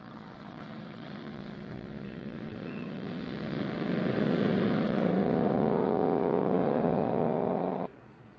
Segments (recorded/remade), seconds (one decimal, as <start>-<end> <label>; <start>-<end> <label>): 0.0-8.4 remade